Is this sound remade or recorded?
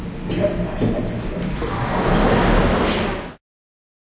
recorded